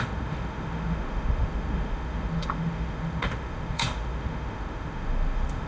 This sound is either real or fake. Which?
fake